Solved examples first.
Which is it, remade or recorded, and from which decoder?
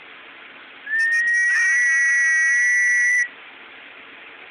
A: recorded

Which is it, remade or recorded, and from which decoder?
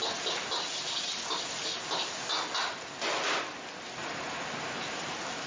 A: recorded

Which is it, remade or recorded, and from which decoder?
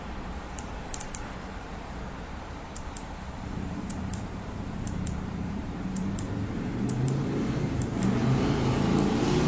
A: remade, vocoder, BigVGAN v2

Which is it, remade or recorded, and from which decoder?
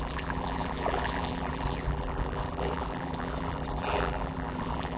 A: remade, vocoder, BigVGAN v2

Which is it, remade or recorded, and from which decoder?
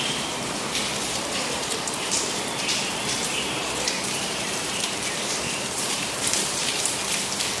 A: remade, vocoder, BigVGAN v2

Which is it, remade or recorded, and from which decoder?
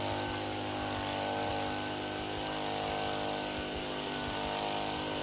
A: recorded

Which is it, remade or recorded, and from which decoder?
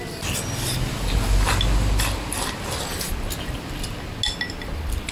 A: recorded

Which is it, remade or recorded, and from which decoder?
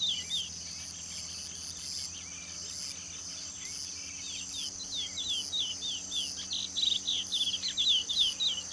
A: recorded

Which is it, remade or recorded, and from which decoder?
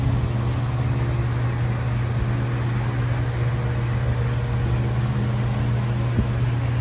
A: recorded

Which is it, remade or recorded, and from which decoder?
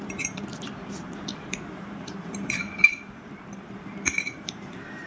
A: remade, vocoder, BigVGAN v2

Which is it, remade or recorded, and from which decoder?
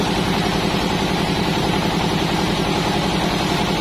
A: remade, vocoder, BigVGAN v2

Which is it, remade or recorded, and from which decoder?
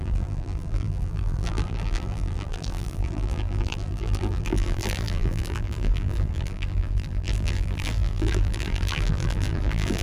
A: remade, vocoder, BigVGAN v2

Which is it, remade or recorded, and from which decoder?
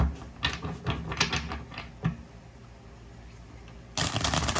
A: recorded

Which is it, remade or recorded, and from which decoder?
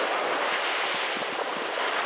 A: recorded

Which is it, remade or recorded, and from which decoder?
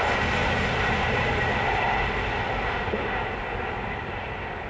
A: recorded